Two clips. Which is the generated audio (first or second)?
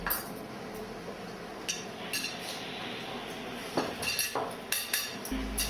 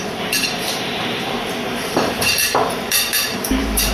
second